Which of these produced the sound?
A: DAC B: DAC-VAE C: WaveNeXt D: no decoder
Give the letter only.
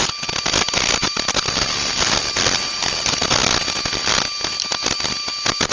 D